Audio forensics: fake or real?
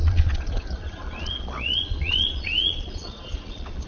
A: fake